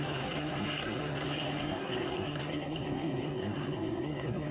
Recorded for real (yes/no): no